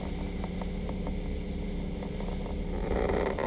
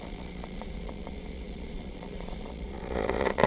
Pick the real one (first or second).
first